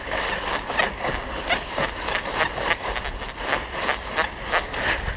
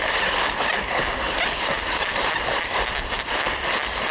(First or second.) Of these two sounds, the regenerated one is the second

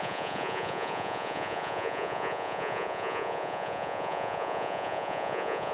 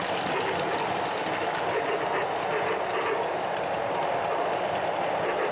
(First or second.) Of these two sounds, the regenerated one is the first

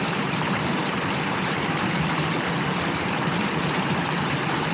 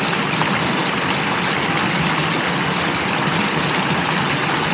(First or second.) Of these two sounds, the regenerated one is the first